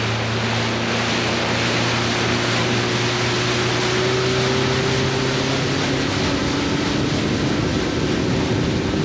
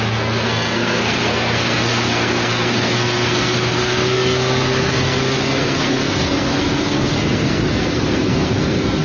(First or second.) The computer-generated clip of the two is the second